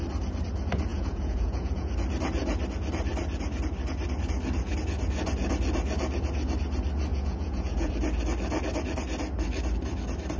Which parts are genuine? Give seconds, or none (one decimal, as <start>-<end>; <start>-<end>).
0.0-0.9; 1.9-7.1; 7.9-10.4